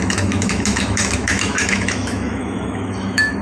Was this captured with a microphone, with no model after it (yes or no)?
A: no